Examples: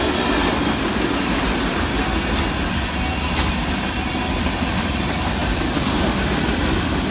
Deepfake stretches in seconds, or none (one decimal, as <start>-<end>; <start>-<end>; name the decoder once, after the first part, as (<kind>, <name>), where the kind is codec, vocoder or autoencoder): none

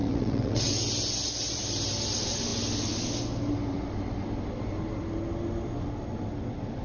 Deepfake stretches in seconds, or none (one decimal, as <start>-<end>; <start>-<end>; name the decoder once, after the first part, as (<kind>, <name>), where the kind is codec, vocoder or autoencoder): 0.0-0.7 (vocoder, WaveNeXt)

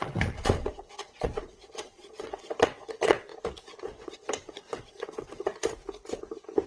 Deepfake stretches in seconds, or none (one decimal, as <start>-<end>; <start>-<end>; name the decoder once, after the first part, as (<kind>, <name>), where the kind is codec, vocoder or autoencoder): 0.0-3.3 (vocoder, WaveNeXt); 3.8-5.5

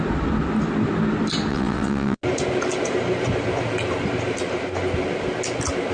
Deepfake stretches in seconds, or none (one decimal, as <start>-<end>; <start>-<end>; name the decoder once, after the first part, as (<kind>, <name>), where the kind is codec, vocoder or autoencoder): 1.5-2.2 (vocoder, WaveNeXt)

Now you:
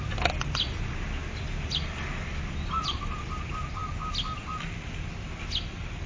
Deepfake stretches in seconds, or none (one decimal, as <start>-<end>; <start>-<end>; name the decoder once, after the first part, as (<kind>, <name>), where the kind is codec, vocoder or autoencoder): none

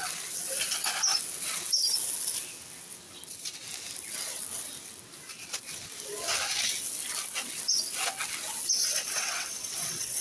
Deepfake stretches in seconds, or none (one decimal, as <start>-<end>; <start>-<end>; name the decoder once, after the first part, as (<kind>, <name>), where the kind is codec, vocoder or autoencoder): 8.8-10.2 (vocoder, WaveNeXt)